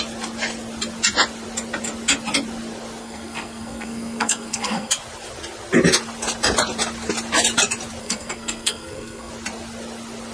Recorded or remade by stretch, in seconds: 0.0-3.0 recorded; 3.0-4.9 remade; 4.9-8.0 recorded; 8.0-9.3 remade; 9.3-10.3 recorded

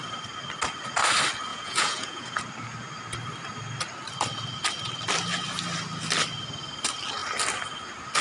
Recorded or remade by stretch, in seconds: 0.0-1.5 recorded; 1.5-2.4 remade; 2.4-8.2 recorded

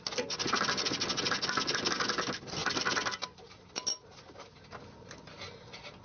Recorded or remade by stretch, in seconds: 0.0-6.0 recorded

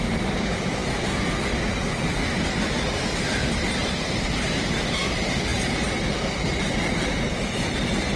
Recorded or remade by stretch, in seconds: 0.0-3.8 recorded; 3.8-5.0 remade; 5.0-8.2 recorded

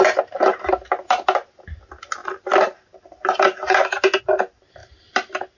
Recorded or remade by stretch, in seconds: 0.0-5.6 recorded